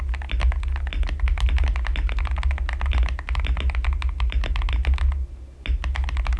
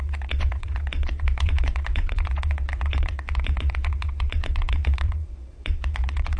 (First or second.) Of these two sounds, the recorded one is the first